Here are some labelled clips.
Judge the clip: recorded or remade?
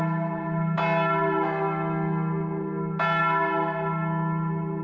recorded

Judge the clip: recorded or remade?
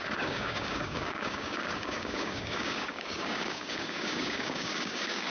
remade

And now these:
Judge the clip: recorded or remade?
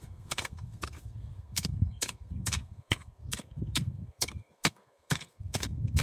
remade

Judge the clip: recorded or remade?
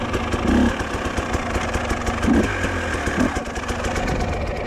recorded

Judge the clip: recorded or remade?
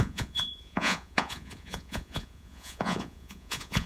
remade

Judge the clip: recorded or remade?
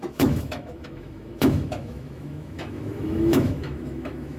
remade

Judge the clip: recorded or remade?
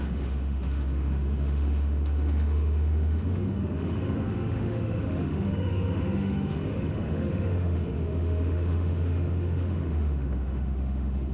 remade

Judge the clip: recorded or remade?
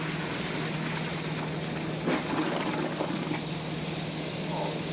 recorded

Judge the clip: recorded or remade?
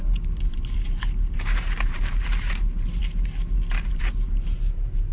remade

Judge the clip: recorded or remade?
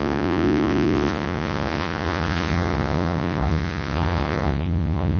remade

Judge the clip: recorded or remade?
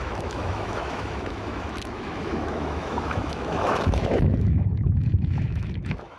remade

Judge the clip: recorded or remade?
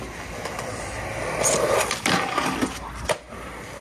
recorded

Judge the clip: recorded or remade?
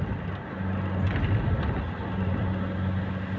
recorded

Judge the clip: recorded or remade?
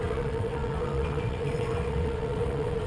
remade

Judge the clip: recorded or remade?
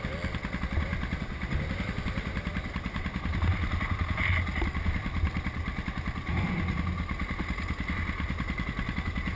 recorded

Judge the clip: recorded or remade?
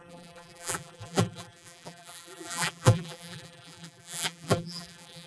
remade